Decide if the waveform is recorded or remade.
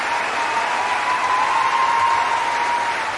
recorded